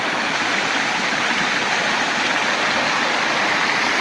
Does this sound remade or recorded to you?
recorded